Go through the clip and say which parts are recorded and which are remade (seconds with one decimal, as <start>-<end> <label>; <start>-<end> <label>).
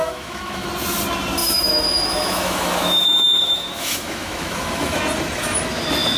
0.0-0.7 remade; 0.7-1.4 recorded; 1.4-5.0 remade; 5.0-6.2 recorded